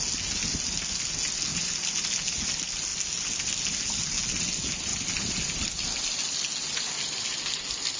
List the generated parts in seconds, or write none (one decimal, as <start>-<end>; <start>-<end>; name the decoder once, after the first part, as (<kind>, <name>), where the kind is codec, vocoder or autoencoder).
none